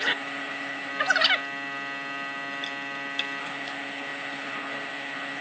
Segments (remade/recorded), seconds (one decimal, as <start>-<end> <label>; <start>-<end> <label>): 0.0-0.9 remade; 0.9-3.4 recorded; 3.4-5.4 remade